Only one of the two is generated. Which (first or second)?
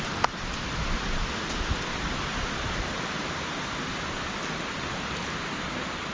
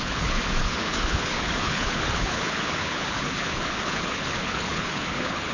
second